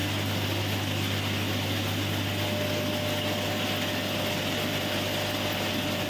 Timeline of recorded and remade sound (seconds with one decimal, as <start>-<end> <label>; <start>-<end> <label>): 0.0-6.1 recorded